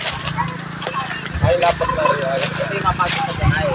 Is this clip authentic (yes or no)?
yes